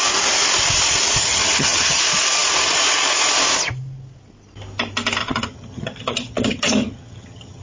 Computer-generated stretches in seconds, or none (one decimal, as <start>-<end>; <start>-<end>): 1.2-2.0; 5.2-7.6